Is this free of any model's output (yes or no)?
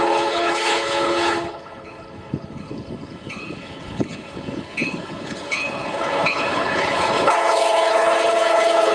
no